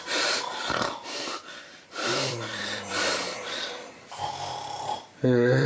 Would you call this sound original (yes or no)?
no